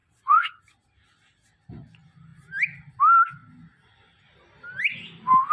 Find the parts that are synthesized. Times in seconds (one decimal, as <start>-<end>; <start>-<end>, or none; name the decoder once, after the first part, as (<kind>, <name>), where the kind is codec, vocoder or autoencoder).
0.0-0.6 (vocoder, Vocos)